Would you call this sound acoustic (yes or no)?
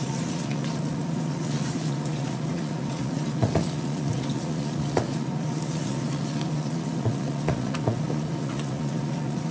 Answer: no